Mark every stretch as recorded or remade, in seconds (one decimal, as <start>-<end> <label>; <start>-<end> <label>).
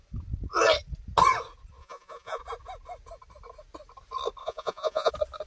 0.0-1.8 recorded; 1.8-2.4 remade; 2.4-4.4 recorded; 4.4-5.1 remade; 5.1-5.5 recorded